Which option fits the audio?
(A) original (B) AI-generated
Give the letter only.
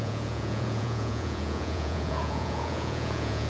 B